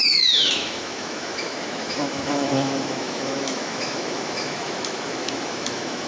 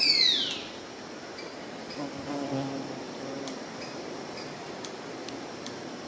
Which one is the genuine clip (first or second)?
second